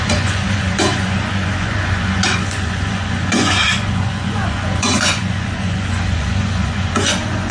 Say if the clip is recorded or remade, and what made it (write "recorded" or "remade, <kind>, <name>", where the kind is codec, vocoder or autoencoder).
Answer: remade, vocoder, Vocos